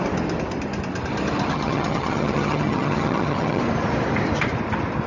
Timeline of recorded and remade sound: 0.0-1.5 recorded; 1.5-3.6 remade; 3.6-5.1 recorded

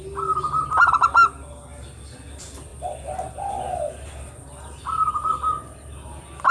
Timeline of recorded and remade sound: 0.0-5.0 recorded; 5.0-5.6 remade; 5.6-6.5 recorded

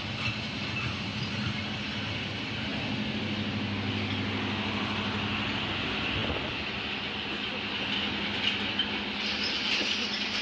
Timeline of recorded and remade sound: 0.0-10.4 recorded

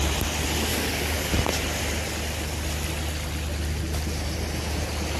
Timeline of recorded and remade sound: 0.0-0.7 recorded; 0.7-1.3 remade; 1.3-5.2 recorded

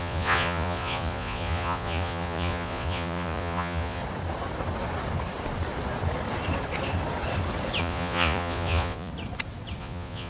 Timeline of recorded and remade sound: 0.0-4.0 remade; 4.0-7.8 recorded; 7.8-9.1 remade; 9.1-9.8 recorded; 9.8-10.3 remade

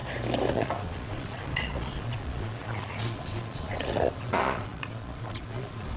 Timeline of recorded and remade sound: 0.0-0.5 recorded; 0.5-6.0 remade

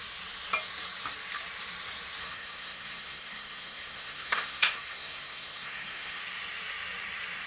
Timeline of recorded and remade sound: 0.0-2.2 recorded; 2.2-6.2 remade; 6.2-7.5 recorded